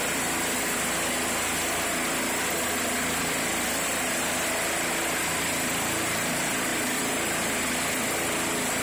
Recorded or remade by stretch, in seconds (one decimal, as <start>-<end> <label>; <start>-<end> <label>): 0.0-6.7 recorded; 6.7-7.3 remade; 7.3-8.8 recorded